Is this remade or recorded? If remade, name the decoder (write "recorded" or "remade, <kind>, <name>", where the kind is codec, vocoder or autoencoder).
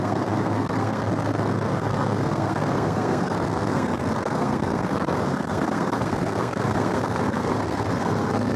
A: remade, codec, SNAC